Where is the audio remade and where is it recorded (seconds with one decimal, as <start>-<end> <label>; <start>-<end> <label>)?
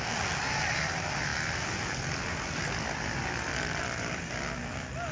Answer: 0.0-5.1 recorded